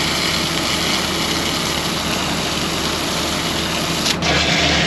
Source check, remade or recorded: recorded